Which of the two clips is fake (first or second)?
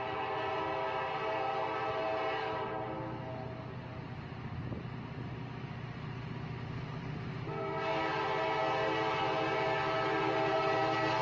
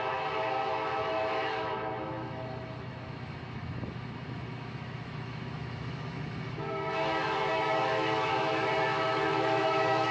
second